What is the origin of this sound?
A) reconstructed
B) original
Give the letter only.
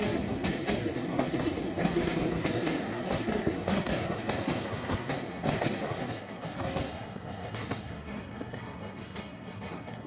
A